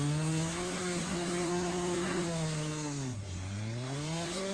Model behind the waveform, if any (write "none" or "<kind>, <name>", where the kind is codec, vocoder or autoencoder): codec, SNAC